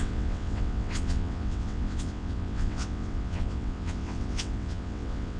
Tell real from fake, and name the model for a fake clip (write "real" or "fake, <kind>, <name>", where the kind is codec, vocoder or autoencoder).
fake, vocoder, WaveNeXt